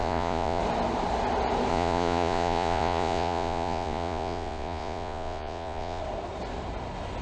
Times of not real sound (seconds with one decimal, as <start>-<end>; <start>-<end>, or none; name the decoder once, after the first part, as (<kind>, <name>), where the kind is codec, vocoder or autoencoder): 0.0-0.6 (vocoder, Vocos); 1.7-6.0